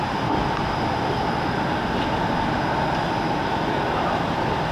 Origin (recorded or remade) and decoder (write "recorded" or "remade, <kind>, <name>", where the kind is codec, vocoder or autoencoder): recorded